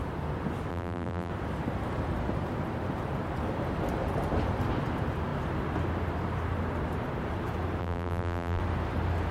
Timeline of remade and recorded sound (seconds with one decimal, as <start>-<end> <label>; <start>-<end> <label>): 0.0-0.7 recorded; 0.7-1.3 remade; 1.3-7.8 recorded; 7.8-8.6 remade; 8.6-9.3 recorded